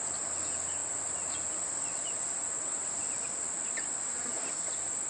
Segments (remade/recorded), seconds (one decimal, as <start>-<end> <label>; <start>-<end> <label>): 0.0-5.1 recorded